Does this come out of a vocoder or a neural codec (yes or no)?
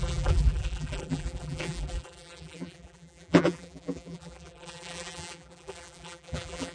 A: yes